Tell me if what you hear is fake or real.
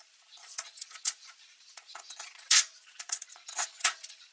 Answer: fake